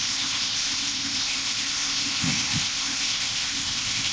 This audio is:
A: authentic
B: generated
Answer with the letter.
B